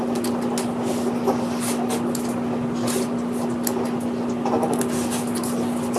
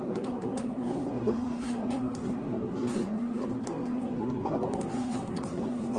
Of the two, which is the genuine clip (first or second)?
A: first